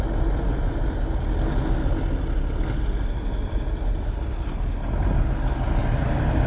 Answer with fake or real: real